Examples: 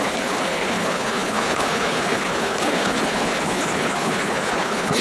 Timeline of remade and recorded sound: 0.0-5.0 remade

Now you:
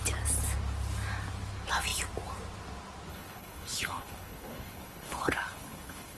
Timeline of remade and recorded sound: 0.0-3.1 recorded; 3.1-6.2 remade